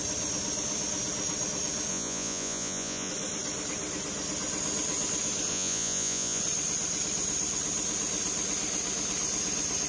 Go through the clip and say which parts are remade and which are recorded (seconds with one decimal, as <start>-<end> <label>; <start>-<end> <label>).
0.0-1.9 recorded; 1.9-3.1 remade; 3.1-5.5 recorded; 5.5-6.4 remade; 6.4-9.9 recorded